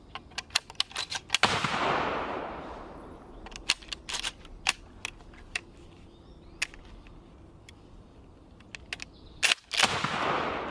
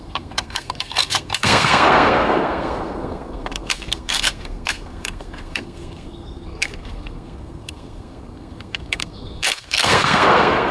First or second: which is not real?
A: second